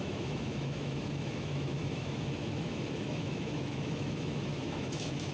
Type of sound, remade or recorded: remade